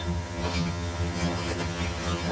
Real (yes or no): no